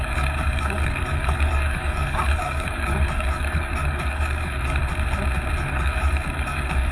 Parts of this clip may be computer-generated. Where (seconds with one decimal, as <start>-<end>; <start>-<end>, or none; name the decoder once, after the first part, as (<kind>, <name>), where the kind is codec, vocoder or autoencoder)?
0.0-4.9 (codec, DAC); 5.6-6.9